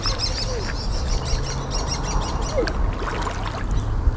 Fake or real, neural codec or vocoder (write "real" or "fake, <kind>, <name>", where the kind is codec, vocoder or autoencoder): real